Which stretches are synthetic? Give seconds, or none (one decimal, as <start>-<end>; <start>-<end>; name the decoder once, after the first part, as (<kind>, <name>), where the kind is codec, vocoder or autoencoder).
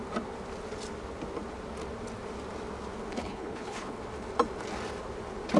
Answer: 3.1-4.0 (codec, HILCodec)